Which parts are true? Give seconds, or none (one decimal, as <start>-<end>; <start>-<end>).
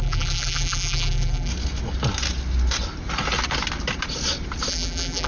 1.5-4.7